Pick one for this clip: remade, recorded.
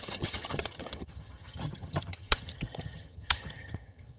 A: remade